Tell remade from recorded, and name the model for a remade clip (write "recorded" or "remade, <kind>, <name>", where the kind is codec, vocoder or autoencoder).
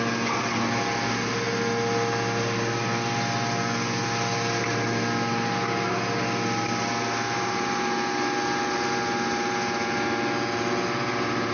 recorded